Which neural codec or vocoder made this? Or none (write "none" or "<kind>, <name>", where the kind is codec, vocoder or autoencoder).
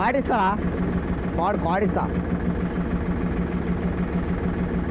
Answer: none